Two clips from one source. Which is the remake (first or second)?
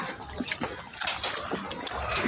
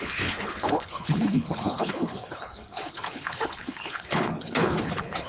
second